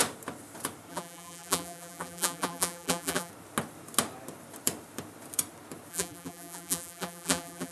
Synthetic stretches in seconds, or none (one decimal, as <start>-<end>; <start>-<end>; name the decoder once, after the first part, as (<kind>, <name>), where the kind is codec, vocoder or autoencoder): 0.9-3.3 (vocoder, BigVGAN v2); 5.9-7.7